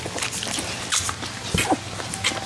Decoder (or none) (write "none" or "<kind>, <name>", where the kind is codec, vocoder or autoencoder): none